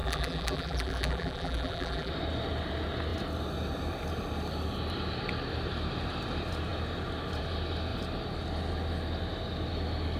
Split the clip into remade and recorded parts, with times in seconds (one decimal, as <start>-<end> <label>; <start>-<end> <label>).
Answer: 0.0-2.1 remade; 2.1-10.2 recorded